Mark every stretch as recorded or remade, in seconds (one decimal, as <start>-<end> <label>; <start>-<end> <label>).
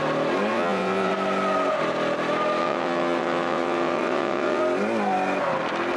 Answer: 0.0-0.5 recorded; 0.5-1.1 remade; 1.1-2.6 recorded; 2.6-4.6 remade; 4.6-6.0 recorded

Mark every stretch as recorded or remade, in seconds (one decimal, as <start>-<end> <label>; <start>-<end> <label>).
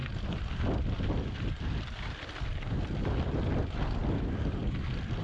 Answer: 0.0-5.2 remade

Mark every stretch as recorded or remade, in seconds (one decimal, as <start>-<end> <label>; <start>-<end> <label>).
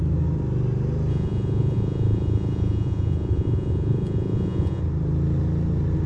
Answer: 0.0-1.1 recorded; 1.1-4.8 remade; 4.8-6.1 recorded